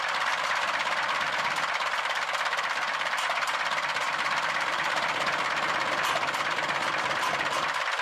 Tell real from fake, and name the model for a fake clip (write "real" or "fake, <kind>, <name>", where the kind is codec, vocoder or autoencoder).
fake, vocoder, BigVGAN v2